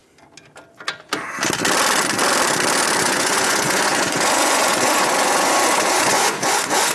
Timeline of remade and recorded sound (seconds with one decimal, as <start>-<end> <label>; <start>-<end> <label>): 0.0-3.0 recorded; 3.0-6.9 remade

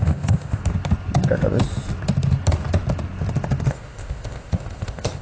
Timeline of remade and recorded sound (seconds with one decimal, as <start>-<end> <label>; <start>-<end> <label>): 0.0-0.6 remade; 0.6-3.7 recorded; 3.7-5.2 remade

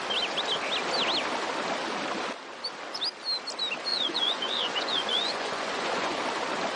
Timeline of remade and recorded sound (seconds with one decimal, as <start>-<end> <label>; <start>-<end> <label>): 0.0-3.9 recorded; 3.9-6.2 remade; 6.2-6.8 recorded

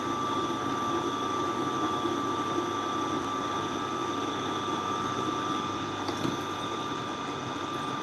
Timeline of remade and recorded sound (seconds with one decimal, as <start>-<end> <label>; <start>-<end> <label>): 0.0-8.0 recorded

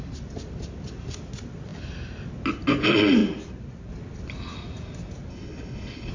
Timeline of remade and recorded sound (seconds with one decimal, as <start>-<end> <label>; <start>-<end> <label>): 0.0-5.3 recorded; 5.3-6.1 remade